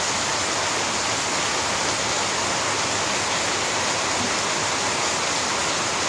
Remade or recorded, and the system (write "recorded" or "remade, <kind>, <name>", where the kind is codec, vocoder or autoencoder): recorded